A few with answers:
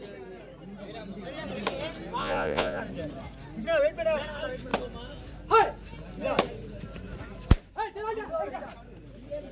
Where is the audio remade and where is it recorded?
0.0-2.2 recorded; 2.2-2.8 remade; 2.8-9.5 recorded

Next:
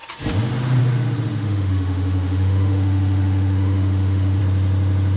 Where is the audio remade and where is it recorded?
0.0-1.3 recorded; 1.3-4.4 remade; 4.4-5.2 recorded